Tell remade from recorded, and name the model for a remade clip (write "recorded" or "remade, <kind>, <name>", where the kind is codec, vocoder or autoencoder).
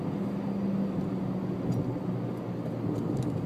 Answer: recorded